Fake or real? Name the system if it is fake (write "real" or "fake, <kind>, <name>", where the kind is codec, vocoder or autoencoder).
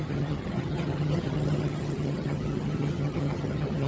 fake, vocoder, HiFi-GAN